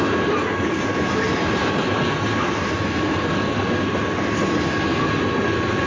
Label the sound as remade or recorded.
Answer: recorded